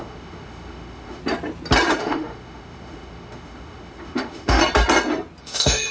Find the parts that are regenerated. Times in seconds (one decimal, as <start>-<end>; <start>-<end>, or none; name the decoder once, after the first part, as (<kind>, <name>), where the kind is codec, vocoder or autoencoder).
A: 0.0-1.2 (autoencoder, DAC-VAE); 2.0-4.6; 5.4-5.9